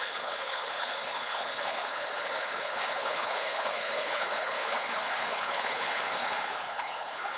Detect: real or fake fake